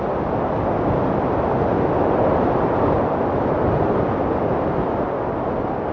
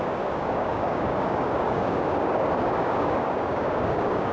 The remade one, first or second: second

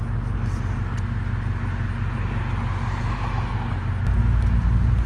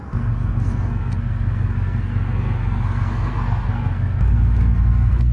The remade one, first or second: second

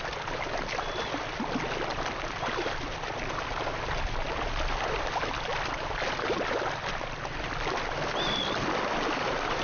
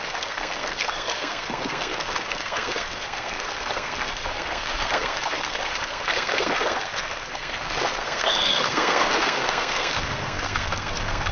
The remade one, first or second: second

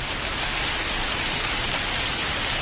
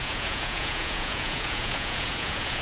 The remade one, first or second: second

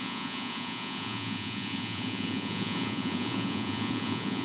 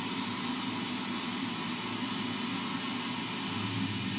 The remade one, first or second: first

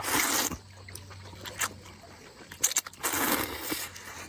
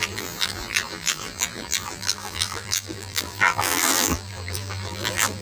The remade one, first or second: second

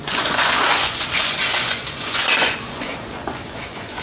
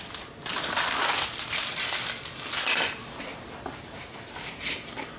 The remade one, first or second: first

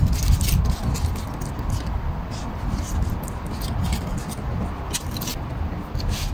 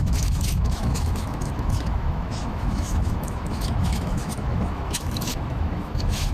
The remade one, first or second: second